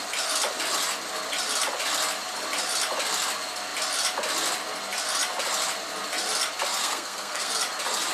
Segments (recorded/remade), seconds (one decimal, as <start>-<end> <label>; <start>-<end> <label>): 0.0-6.8 recorded; 6.8-7.5 remade; 7.5-8.1 recorded

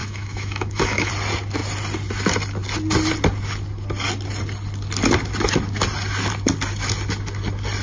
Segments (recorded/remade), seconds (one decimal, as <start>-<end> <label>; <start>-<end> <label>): 0.0-1.1 remade; 1.1-7.8 recorded

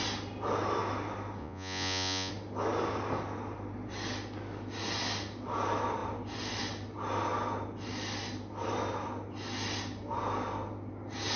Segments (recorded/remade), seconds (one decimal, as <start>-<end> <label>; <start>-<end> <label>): 0.0-1.4 recorded; 1.4-2.3 remade; 2.3-11.4 recorded

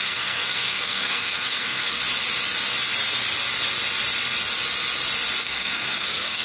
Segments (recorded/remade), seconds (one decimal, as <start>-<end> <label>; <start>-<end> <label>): 0.0-2.0 remade; 2.0-5.4 recorded; 5.4-6.4 remade

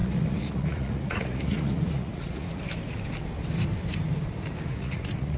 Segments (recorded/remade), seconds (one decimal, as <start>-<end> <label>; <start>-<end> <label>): 0.0-2.6 remade; 2.6-4.7 recorded; 4.7-5.4 remade